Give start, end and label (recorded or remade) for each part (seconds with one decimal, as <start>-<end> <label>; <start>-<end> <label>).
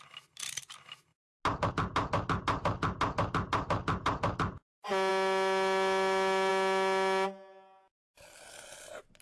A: 0.0-9.2 recorded